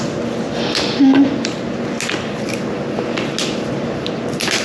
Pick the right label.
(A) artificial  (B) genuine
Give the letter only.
B